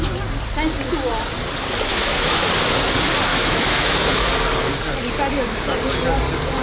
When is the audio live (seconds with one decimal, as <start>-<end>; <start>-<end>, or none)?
0.0-1.9; 2.5-3.3; 4.3-6.6